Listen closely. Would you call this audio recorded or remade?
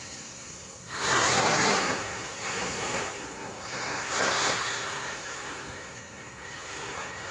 remade